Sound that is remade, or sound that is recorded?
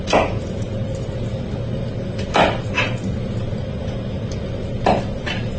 recorded